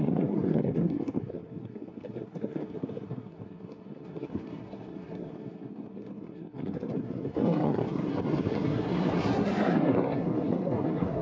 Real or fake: fake